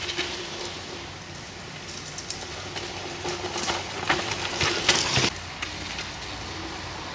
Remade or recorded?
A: recorded